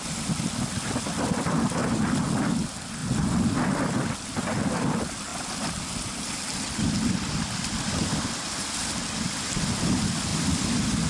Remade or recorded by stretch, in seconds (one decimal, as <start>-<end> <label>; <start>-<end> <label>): 0.0-3.0 recorded; 3.0-3.6 remade; 3.6-5.3 recorded; 5.3-8.9 remade; 8.9-10.3 recorded; 10.3-11.1 remade